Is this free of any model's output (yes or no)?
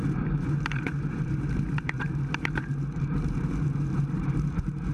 no